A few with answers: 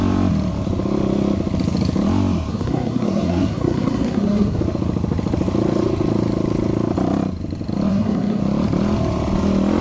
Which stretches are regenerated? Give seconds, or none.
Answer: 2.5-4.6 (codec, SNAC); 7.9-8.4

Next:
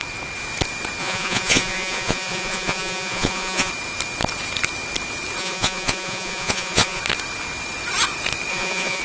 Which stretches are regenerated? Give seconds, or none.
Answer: 1.0-3.7 (vocoder, Vocos); 5.4-7.0; 8.5-9.0

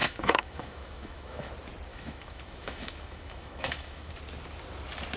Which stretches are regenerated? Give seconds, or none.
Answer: 0.0-1.5 (autoencoder, DAC-VAE); 1.9-4.1

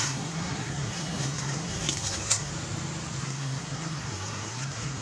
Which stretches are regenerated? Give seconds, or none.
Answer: 0.0-2.5 (codec, SNAC); 3.2-5.0